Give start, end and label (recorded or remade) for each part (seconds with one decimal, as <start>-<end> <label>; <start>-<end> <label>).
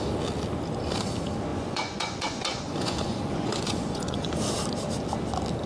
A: 0.0-1.5 recorded; 1.5-4.3 remade; 4.3-5.7 recorded